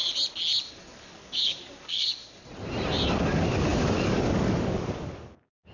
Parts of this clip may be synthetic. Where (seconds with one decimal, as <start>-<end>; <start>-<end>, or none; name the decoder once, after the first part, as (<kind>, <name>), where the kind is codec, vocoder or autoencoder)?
0.7-2.2 (codec, DAC); 3.1-5.7